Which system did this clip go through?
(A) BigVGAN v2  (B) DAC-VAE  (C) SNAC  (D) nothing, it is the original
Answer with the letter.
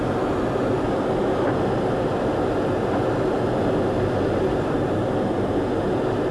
D